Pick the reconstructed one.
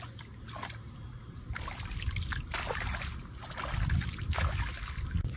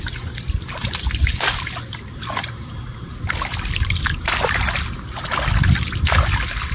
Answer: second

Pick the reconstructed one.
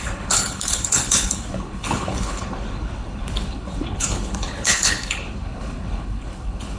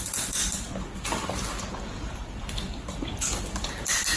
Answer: first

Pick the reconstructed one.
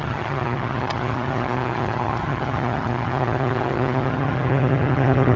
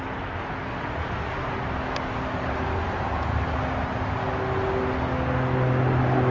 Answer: first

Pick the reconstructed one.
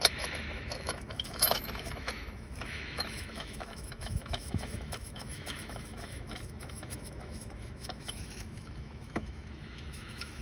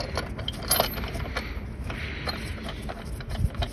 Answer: first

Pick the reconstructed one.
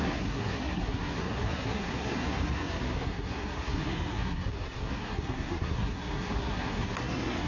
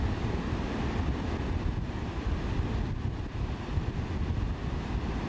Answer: first